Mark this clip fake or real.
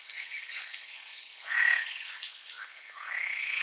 fake